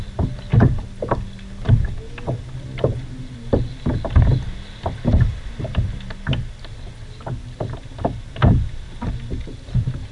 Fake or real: real